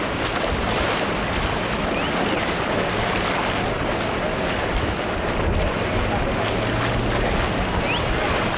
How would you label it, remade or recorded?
recorded